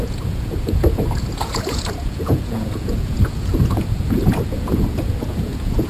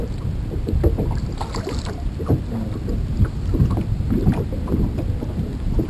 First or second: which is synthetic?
first